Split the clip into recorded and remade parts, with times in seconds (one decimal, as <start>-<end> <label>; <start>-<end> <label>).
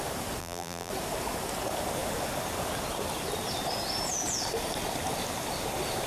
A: 0.0-0.4 recorded; 0.4-0.9 remade; 0.9-6.1 recorded